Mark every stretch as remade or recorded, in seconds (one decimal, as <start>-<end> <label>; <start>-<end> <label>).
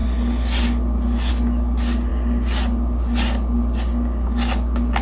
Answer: 0.0-5.0 recorded